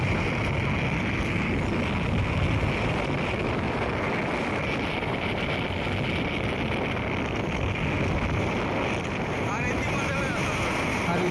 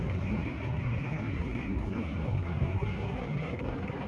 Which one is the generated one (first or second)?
second